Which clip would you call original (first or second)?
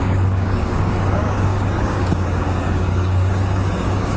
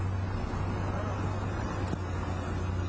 second